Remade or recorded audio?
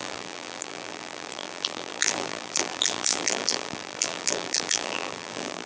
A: remade